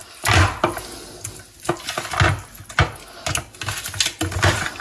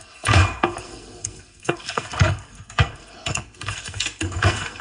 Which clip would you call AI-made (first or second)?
second